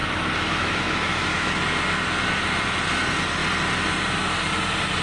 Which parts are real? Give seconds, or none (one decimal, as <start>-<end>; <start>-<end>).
1.6-5.0